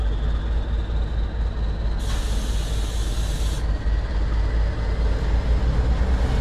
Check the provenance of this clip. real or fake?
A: real